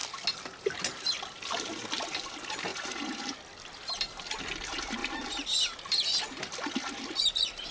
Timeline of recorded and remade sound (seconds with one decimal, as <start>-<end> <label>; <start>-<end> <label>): 0.0-7.7 recorded